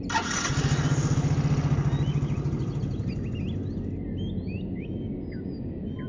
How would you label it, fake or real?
real